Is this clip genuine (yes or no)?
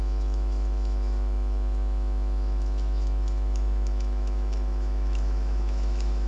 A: no